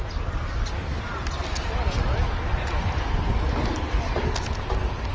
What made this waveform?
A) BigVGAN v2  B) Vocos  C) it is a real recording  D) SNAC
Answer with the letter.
C